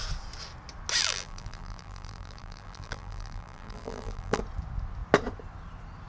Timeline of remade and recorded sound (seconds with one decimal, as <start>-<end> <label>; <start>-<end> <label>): 0.0-1.0 recorded; 1.0-4.4 remade; 4.4-6.1 recorded